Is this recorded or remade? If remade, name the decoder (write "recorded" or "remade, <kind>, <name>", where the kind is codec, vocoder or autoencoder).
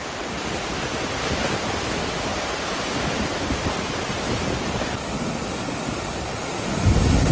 remade, vocoder, BigVGAN v2